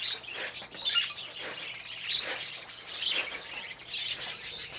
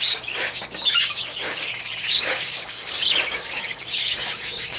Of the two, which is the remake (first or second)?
second